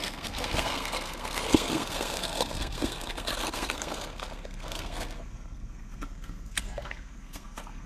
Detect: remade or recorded remade